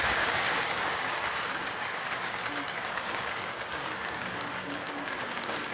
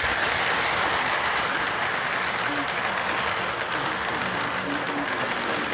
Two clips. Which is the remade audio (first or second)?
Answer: first